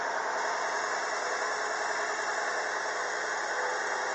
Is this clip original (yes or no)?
yes